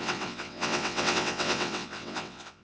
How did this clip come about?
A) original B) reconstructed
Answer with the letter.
B